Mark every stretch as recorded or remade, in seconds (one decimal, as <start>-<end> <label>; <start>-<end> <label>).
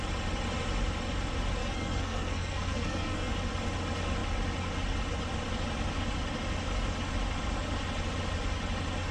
0.0-1.6 recorded; 1.6-3.3 remade; 3.3-9.1 recorded